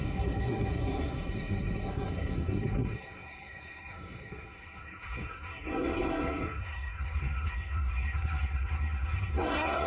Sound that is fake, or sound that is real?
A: fake